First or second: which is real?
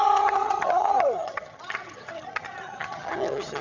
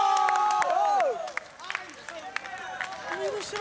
second